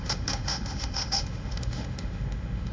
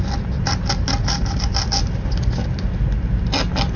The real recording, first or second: second